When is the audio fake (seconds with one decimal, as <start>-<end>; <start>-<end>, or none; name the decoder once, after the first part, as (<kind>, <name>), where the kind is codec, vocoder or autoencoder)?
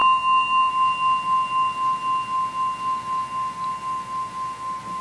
0.0-0.7 (autoencoder, DAC-VAE)